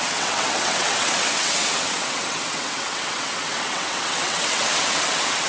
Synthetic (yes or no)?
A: yes